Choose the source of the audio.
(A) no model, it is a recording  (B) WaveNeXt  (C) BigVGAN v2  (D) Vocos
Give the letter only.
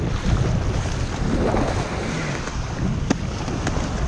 A